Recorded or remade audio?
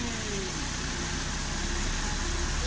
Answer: recorded